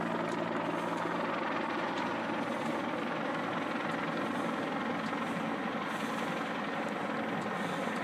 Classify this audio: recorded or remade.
recorded